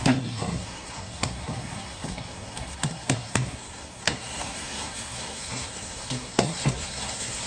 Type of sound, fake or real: fake